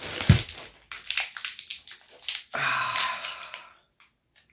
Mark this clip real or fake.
real